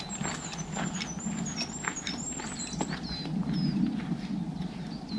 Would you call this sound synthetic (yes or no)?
no